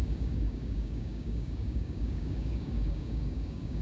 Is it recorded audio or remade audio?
remade